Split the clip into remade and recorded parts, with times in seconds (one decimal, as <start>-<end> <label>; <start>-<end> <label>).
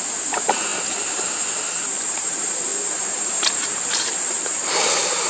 0.0-0.7 remade; 0.7-2.1 recorded; 2.1-5.3 remade